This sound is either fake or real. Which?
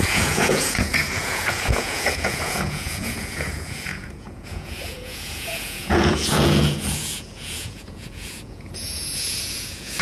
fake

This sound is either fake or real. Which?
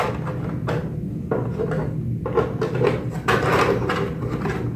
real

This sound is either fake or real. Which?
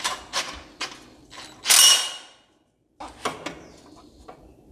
real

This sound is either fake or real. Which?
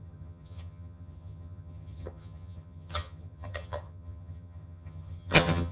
fake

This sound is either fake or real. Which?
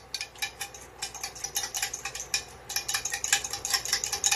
real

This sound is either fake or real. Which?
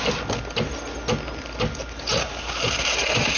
real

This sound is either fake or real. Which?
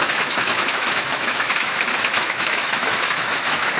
fake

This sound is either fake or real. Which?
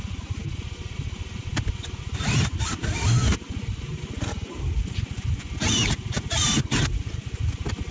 real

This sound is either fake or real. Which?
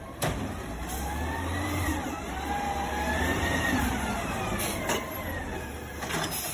fake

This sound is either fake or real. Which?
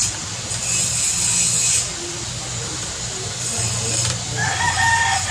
real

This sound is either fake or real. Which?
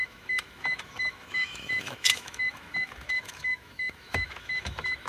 fake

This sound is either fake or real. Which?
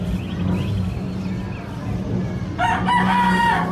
real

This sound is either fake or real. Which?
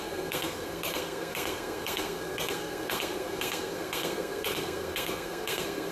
fake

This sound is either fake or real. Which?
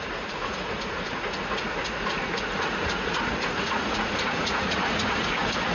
fake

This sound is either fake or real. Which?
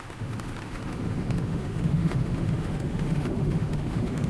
fake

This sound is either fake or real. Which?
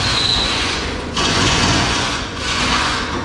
fake